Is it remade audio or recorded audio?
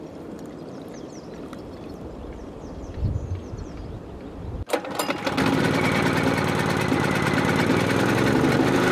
recorded